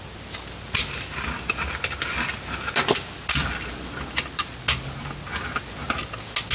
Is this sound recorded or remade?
recorded